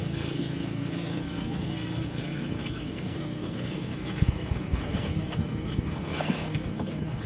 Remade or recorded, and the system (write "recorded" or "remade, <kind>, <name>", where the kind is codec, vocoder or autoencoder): remade, codec, SNAC